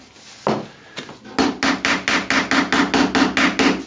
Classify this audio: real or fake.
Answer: real